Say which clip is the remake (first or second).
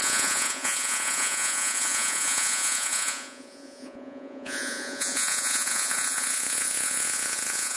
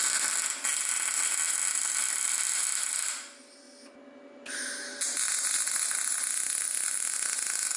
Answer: first